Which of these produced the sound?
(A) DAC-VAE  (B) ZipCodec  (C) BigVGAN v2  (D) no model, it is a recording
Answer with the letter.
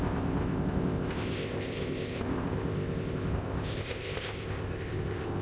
B